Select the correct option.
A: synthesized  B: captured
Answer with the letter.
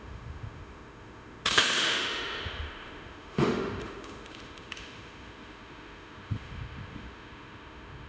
A